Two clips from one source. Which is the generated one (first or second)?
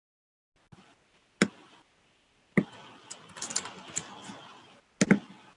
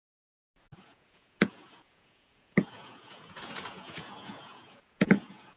second